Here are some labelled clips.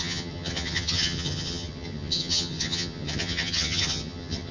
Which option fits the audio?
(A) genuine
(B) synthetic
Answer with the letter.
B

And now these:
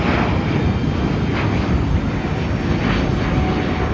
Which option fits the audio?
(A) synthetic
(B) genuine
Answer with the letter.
B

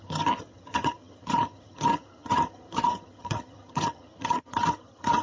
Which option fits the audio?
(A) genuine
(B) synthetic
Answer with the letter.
B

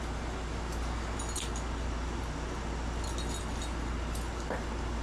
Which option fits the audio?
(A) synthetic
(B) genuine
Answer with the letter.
B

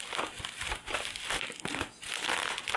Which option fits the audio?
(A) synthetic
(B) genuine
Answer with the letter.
A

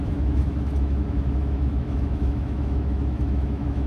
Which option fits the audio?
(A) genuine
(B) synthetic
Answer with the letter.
B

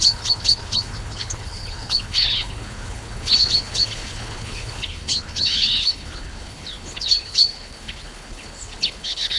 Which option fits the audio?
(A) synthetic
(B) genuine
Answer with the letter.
A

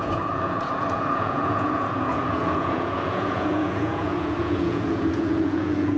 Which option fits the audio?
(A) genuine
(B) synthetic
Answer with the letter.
B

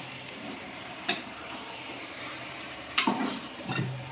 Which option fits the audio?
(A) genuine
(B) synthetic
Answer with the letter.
B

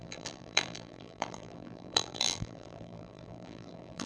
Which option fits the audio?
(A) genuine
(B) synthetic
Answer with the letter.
B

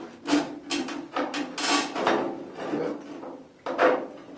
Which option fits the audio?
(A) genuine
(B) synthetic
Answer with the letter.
A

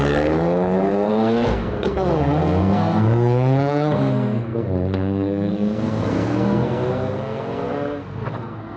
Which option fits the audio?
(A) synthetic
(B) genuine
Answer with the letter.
A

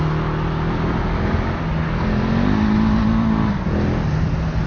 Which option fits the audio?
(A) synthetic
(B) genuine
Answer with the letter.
B